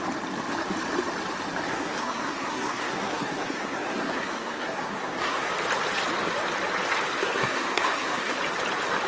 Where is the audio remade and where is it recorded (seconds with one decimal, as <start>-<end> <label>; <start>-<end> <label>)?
0.0-1.6 recorded; 1.6-5.5 remade; 5.5-7.2 recorded; 7.2-8.4 remade; 8.4-9.1 recorded